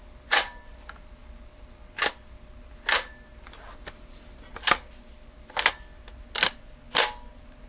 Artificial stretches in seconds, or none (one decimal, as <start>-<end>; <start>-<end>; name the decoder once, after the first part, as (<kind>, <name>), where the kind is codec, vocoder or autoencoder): none